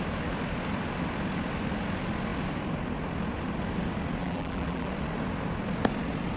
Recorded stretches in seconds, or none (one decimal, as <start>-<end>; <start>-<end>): 0.0-4.2; 4.9-6.4